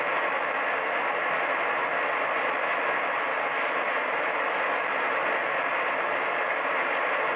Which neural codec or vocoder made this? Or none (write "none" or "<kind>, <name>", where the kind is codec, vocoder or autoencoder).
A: none